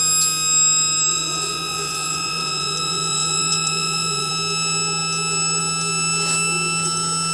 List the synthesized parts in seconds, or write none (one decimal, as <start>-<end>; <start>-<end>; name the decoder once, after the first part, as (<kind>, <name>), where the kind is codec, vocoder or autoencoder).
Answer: 1.1-4.3 (vocoder, Vocos)